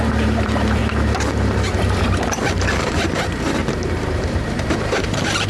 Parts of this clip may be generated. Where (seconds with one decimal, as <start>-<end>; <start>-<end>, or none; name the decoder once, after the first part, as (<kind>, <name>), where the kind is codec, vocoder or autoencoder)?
0.0-0.8 (vocoder, BigVGAN v2); 2.7-5.5